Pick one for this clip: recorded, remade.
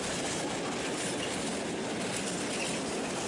recorded